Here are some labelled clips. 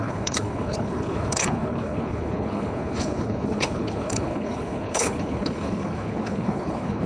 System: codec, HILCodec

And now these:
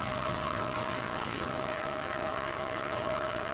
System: vocoder, WaveNeXt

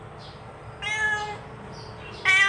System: none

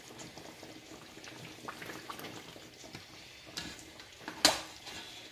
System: none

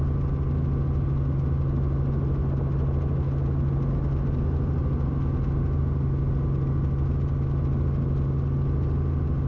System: none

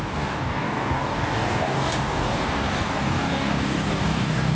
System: codec, DAC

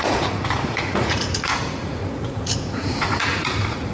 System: vocoder, Vocos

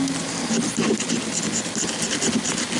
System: none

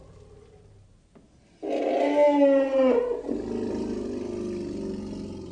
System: none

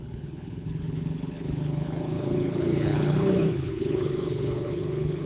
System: codec, HILCodec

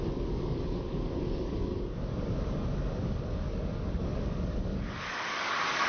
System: codec, DAC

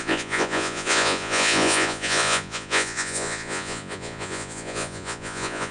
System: vocoder, Vocos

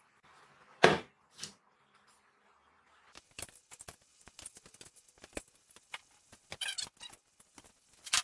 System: none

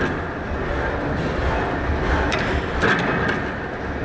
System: none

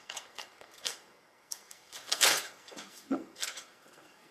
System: codec, SNAC